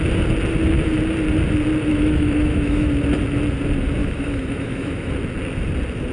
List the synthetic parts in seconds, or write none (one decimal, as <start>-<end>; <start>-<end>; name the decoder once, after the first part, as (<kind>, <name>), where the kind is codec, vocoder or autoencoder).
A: 1.9-2.9 (autoencoder, DAC-VAE); 4.0-5.1